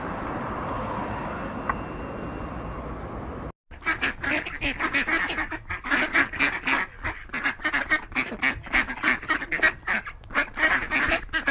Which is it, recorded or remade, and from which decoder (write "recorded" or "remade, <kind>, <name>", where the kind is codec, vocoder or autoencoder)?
recorded